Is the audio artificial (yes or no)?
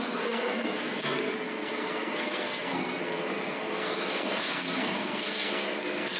yes